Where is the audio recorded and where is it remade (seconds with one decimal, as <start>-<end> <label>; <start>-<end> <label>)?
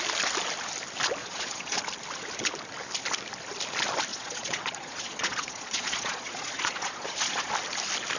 0.0-1.2 recorded; 1.2-1.8 remade; 1.8-4.1 recorded; 4.1-7.5 remade; 7.5-8.2 recorded